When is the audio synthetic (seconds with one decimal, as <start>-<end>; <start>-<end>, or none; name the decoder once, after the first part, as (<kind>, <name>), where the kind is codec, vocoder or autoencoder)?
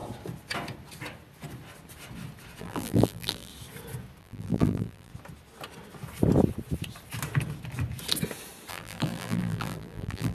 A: 2.6-3.5 (vocoder, BigVGAN v2); 4.2-5.1; 8.7-10.3